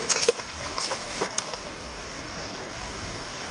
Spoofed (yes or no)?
yes